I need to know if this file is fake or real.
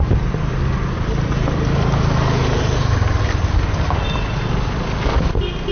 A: real